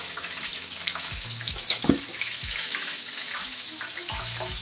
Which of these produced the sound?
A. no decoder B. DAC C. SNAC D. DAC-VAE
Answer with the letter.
D